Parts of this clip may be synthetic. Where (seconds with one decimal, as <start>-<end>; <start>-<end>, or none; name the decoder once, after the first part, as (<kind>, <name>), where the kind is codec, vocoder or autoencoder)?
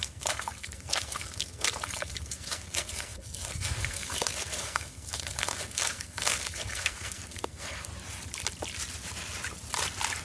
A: 0.0-7.9 (codec, SNAC)